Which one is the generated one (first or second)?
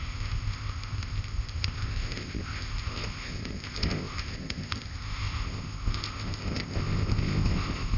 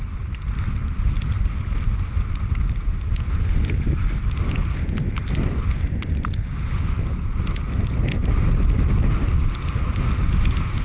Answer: first